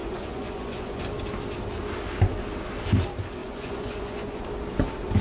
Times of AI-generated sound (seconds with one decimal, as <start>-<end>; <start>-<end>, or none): 0.0-1.0; 3.4-4.4